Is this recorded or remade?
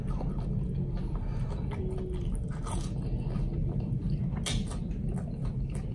recorded